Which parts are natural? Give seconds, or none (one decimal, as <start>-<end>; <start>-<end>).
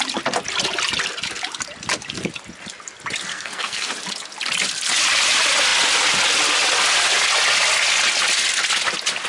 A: 0.0-3.3; 3.9-9.3